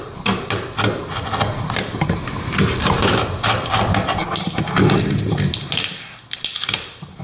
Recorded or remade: recorded